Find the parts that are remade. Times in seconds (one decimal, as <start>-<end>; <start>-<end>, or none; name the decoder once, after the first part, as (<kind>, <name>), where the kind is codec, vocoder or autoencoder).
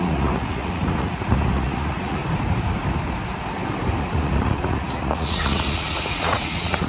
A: 0.0-2.2 (vocoder, Vocos); 4.0-6.9